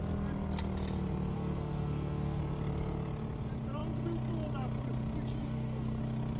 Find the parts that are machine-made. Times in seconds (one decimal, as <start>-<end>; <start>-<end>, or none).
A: 1.3-2.4; 5.4-6.0